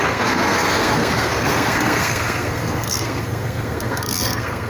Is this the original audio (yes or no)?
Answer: no